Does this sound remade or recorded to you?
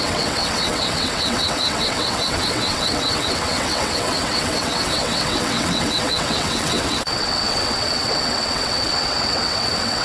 remade